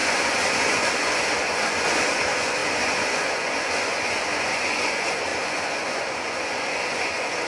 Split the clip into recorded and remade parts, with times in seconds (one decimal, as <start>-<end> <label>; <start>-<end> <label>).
0.0-7.5 remade